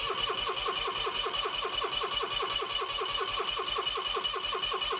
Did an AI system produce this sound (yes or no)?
no